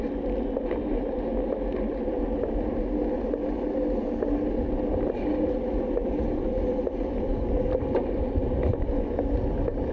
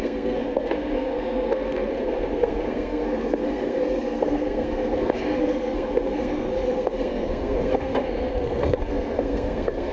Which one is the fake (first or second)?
second